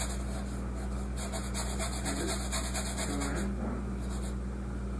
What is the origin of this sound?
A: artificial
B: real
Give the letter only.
B